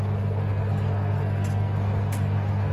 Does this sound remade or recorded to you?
remade